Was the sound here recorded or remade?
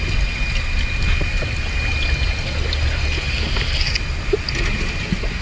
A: recorded